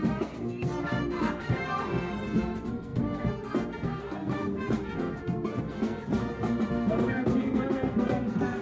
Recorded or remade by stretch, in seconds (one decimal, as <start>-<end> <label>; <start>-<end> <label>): 0.0-6.2 remade; 6.2-6.7 recorded; 6.7-8.6 remade